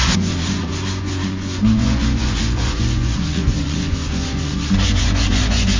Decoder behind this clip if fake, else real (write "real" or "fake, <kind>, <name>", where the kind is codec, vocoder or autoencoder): fake, vocoder, Vocos